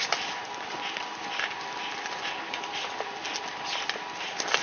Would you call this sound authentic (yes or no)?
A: yes